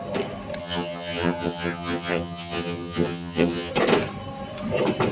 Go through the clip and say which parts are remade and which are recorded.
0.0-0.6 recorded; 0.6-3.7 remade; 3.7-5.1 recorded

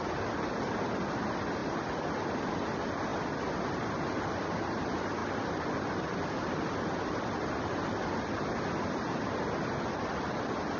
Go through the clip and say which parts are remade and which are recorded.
0.0-10.8 recorded

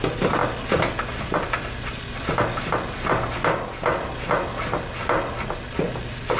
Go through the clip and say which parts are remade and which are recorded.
0.0-6.4 recorded

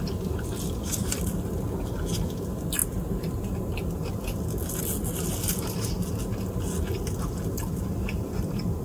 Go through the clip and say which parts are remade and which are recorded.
0.0-8.8 recorded

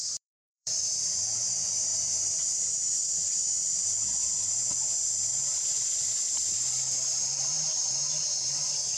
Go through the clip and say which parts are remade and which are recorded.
0.0-9.0 remade

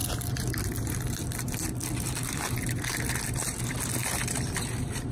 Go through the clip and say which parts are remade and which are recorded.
0.0-3.1 remade; 3.1-4.0 recorded; 4.0-5.1 remade

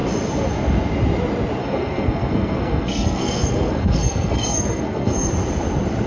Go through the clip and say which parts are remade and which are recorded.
0.0-1.6 recorded; 1.6-5.3 remade; 5.3-6.1 recorded

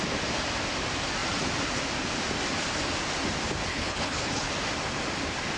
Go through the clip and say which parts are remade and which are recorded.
0.0-3.7 recorded; 3.7-4.5 remade; 4.5-5.6 recorded